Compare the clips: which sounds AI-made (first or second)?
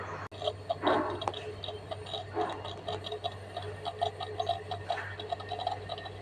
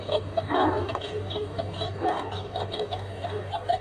second